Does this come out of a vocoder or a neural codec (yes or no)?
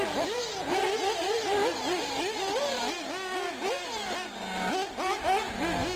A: no